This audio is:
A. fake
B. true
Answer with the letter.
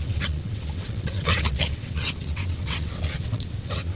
A